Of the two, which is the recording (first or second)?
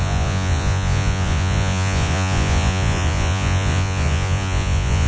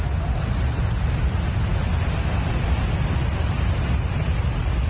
second